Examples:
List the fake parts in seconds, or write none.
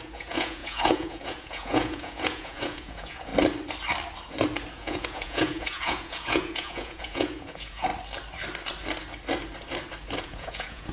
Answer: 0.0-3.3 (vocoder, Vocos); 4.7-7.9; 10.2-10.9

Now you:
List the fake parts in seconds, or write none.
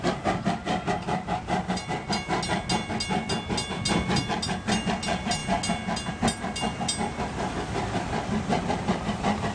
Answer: none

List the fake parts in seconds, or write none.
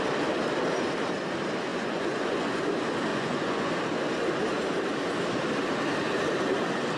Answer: 1.7-2.6 (vocoder, Vocos); 3.1-3.7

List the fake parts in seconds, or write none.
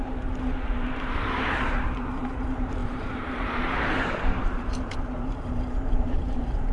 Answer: 0.0-6.7 (vocoder, BigVGAN v2)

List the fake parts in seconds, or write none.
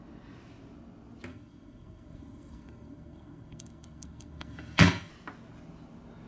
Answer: 1.3-5.1 (codec, SNAC)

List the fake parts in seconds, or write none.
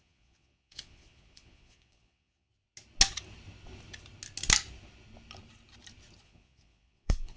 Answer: 0.0-2.5 (vocoder, Vocos); 6.2-7.4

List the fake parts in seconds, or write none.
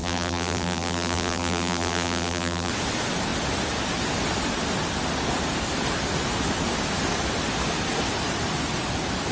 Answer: 0.0-2.7 (vocoder, BigVGAN v2)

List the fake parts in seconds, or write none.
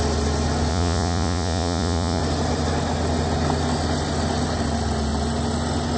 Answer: 0.7-2.2 (vocoder, Vocos)